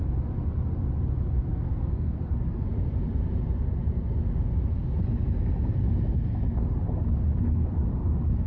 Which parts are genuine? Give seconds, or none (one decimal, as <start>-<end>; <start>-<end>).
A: 0.0-1.5; 2.2-8.5

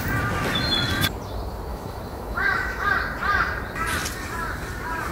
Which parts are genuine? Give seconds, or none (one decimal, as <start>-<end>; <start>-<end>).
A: 0.0-1.7; 2.9-5.1

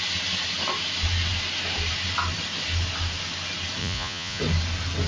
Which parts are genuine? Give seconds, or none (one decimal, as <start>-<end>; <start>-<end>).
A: 0.0-3.8; 4.4-5.1

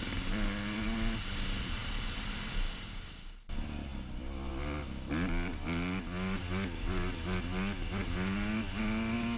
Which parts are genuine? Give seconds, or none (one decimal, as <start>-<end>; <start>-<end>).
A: 0.0-9.4

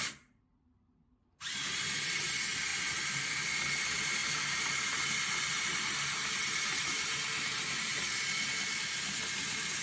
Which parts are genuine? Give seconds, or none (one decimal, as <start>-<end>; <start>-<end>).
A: 0.0-9.8

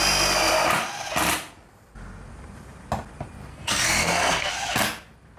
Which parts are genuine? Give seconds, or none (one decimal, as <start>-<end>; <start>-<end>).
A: 0.0-3.5; 4.5-5.4

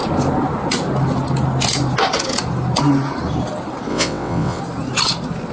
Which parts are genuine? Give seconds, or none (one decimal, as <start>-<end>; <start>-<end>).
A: 0.0-3.9; 4.6-5.5